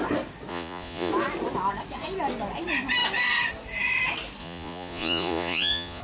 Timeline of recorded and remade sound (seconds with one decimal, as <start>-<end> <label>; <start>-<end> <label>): 0.0-0.5 recorded; 0.5-1.1 remade; 1.1-4.4 recorded; 4.4-6.0 remade